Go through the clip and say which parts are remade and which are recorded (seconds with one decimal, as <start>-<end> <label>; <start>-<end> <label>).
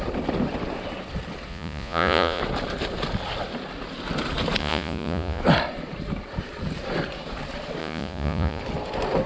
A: 0.0-1.5 recorded; 1.5-2.4 remade; 2.4-4.6 recorded; 4.6-5.4 remade; 5.4-7.8 recorded; 7.8-8.6 remade; 8.6-9.3 recorded